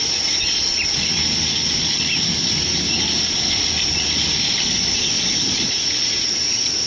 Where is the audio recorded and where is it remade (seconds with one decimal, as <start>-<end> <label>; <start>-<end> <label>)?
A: 0.0-6.9 recorded